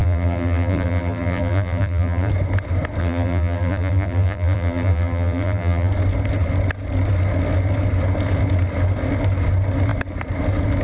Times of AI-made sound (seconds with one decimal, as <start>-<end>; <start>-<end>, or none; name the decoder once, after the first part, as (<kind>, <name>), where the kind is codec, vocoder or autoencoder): 0.0-2.3 (vocoder, BigVGAN v2); 3.0-5.9